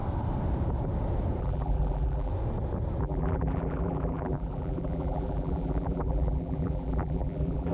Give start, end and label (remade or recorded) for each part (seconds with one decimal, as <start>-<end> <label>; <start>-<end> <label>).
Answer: 0.0-1.4 recorded; 1.4-2.3 remade; 2.3-3.0 recorded; 3.0-7.7 remade